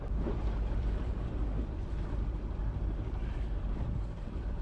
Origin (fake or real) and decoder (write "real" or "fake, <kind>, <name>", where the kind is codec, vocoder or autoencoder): fake, vocoder, BigVGAN v2